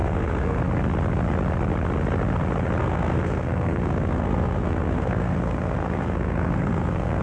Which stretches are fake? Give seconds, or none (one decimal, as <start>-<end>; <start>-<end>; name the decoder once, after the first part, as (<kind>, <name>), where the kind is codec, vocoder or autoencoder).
0.0-0.6 (codec, SNAC); 2.8-7.2